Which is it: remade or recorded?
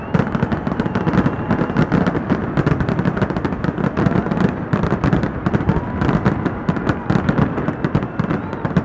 recorded